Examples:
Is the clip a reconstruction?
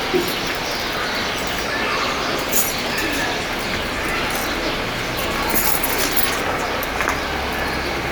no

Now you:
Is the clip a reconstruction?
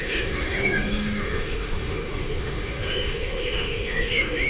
yes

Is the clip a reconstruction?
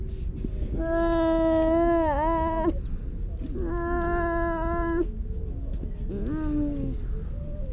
no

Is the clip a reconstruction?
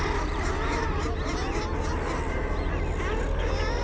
no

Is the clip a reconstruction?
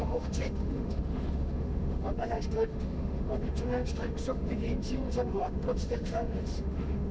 yes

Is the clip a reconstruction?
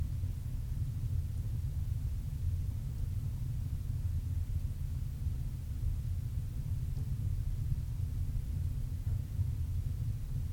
no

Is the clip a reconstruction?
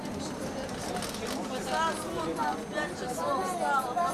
no